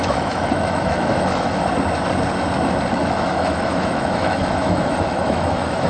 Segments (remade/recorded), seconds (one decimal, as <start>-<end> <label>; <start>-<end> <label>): 0.0-1.6 remade; 1.6-2.9 recorded; 2.9-5.9 remade